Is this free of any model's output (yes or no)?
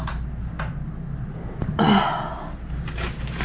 yes